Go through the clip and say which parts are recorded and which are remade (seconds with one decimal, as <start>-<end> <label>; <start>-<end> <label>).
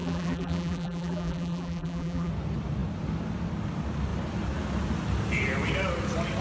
0.0-2.3 remade; 2.3-6.4 recorded